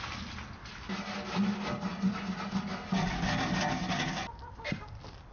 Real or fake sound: real